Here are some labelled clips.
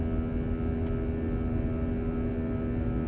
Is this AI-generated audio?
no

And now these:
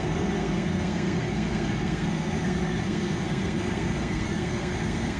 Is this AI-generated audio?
yes